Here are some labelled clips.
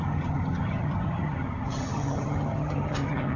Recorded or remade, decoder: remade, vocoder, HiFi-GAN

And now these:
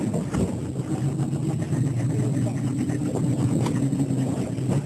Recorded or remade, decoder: recorded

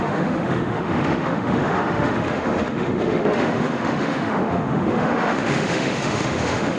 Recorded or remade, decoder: remade, autoencoder, DAC-VAE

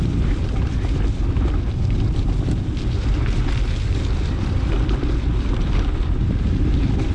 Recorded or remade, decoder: remade, vocoder, BigVGAN v2